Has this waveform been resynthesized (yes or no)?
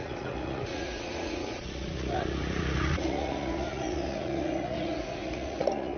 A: yes